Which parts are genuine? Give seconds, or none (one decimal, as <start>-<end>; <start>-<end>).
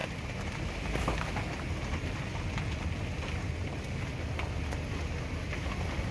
0.0-6.1